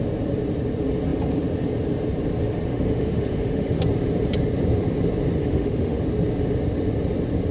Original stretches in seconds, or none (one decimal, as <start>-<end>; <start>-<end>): 0.0-2.7; 3.8-5.4; 6.0-7.5